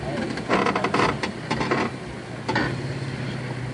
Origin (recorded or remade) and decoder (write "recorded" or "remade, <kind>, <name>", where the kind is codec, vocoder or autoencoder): recorded